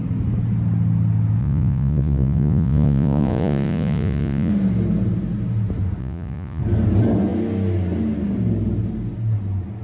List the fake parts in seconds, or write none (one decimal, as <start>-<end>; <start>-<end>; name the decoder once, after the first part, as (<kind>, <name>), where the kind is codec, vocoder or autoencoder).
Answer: 1.4-4.5 (vocoder, Vocos); 6.0-6.6